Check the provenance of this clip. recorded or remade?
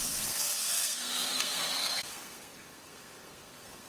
remade